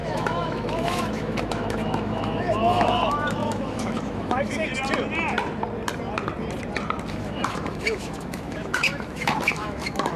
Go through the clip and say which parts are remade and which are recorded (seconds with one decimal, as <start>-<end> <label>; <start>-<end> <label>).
0.0-4.7 remade; 4.7-7.1 recorded; 7.1-10.2 remade